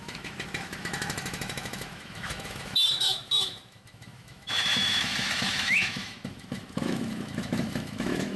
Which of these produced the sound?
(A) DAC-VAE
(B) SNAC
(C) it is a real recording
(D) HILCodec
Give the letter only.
A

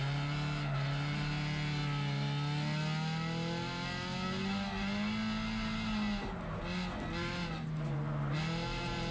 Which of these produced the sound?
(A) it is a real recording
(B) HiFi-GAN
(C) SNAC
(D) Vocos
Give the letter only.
A